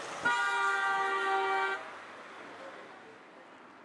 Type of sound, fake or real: real